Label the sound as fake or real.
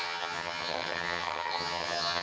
fake